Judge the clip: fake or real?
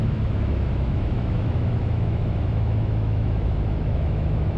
fake